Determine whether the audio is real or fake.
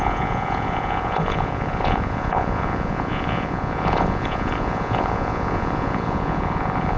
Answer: fake